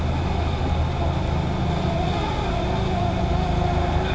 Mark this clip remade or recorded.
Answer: recorded